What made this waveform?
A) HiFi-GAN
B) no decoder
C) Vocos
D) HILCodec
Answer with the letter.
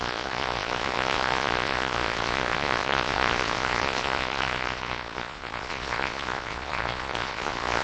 C